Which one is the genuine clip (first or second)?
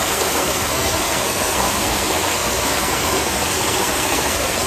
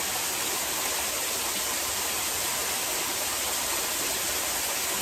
second